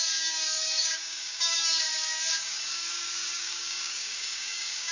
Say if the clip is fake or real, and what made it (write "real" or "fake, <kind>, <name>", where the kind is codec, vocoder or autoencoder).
fake, codec, DAC